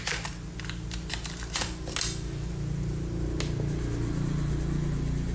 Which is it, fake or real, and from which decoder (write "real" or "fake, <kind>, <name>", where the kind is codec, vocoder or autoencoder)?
real